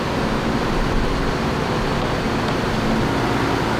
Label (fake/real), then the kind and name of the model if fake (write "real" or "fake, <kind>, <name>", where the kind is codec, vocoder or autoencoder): real